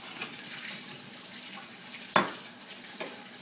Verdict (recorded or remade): recorded